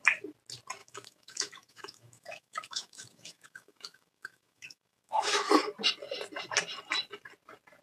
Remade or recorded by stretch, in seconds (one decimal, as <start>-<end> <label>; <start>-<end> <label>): 0.0-0.8 recorded; 0.8-5.5 remade; 5.5-7.8 recorded